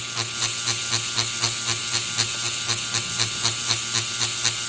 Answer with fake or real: real